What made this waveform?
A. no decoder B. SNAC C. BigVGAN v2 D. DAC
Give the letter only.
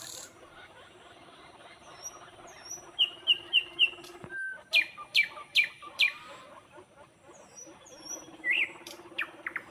C